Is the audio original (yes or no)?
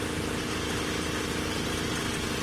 yes